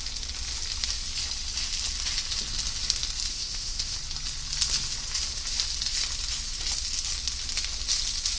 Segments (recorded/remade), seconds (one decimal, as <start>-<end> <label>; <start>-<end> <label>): 0.0-3.3 recorded; 3.3-4.0 remade; 4.0-8.4 recorded